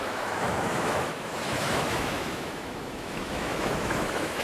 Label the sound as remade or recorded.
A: remade